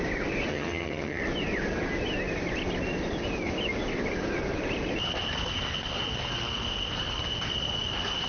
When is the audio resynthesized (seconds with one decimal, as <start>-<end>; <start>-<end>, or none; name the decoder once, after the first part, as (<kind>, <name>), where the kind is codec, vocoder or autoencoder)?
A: 0.5-1.2 (vocoder, HiFi-GAN)